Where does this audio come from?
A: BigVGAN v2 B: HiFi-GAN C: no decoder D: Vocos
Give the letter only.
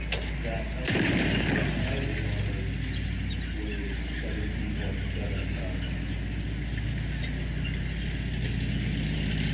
C